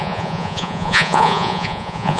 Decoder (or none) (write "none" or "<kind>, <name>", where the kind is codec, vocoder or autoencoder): vocoder, Vocos